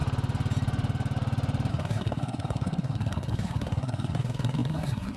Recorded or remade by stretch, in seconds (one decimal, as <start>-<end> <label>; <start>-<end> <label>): 0.0-1.7 recorded; 1.7-5.2 remade